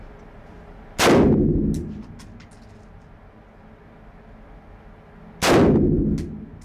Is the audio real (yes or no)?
yes